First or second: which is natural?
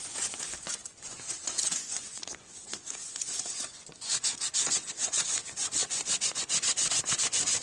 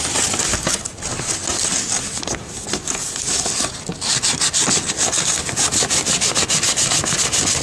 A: second